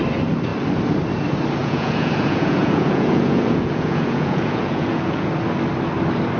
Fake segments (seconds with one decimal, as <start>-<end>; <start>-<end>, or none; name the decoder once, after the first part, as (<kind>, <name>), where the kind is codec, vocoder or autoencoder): 1.6-5.3 (vocoder, Vocos)